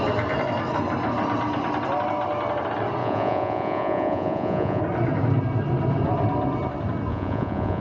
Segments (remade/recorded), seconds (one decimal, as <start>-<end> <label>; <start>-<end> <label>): 0.0-3.0 recorded; 3.0-4.8 remade; 4.8-7.1 recorded; 7.1-7.8 remade